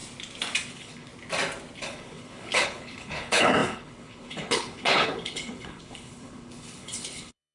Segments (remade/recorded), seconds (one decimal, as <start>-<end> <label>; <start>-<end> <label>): 0.0-0.7 recorded; 0.7-1.1 remade; 1.1-1.8 recorded; 1.8-7.5 remade